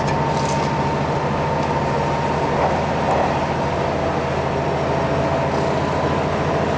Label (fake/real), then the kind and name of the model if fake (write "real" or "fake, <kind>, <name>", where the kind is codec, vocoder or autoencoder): real